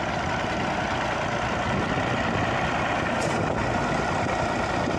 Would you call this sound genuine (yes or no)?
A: yes